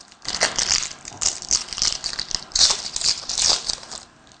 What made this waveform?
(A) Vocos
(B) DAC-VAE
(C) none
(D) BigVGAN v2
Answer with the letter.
C